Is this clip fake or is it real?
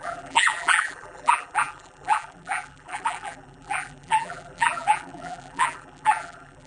fake